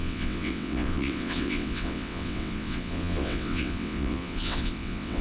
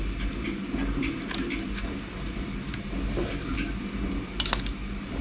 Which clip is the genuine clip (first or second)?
second